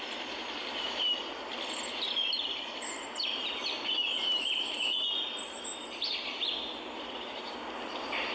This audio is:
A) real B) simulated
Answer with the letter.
A